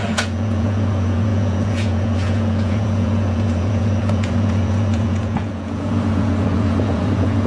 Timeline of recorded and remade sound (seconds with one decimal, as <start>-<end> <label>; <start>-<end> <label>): 0.0-7.5 remade